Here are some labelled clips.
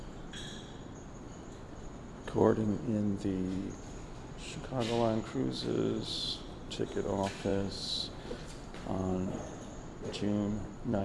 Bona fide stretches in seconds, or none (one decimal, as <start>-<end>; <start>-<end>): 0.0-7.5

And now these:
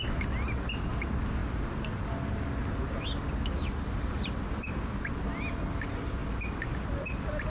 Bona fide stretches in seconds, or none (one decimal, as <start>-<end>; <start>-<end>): 0.0-7.5

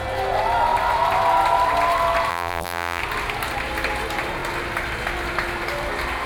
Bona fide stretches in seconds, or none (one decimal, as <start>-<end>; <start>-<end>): 0.0-2.3; 3.0-6.3

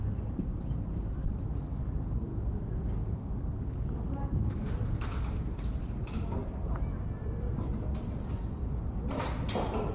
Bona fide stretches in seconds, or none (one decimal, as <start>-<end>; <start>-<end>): 0.0-9.9

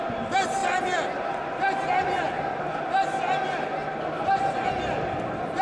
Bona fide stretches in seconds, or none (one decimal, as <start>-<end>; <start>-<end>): 0.0-5.6

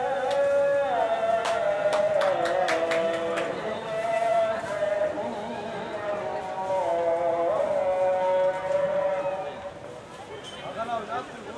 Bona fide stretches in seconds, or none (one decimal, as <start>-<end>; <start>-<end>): 0.0-11.6